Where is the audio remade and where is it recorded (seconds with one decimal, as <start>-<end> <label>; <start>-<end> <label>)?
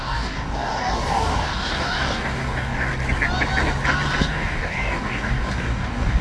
0.0-2.9 remade; 2.9-4.2 recorded; 4.2-6.2 remade